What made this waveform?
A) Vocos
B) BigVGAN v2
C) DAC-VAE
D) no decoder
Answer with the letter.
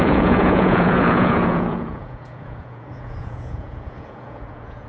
A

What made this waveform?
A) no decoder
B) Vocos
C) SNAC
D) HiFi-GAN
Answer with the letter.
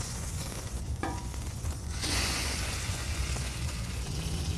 B